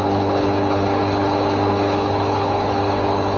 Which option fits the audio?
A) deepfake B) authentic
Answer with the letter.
A